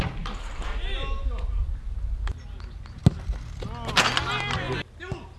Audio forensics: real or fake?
real